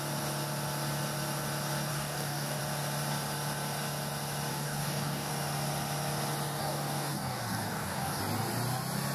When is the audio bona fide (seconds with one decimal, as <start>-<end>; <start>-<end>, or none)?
0.0-1.9; 2.6-4.5; 5.3-6.6; 8.2-9.1